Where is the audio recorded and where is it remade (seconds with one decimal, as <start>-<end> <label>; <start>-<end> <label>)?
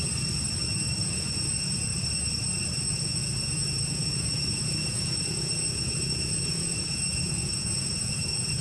0.0-1.0 recorded; 1.0-1.9 remade; 1.9-2.8 recorded; 2.8-8.6 remade